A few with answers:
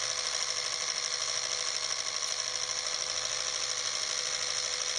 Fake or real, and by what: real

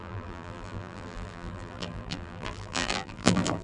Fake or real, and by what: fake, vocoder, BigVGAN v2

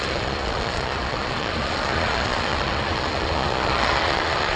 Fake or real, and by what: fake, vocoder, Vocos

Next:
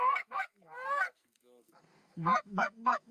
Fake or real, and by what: fake, codec, SNAC